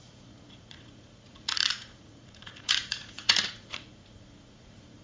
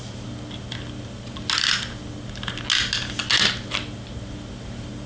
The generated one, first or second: first